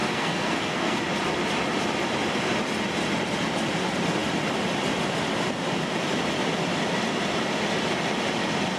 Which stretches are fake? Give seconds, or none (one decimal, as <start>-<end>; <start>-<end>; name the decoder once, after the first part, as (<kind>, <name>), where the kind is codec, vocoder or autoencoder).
0.0-1.0 (codec, SNAC)